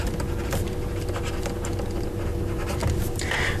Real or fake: real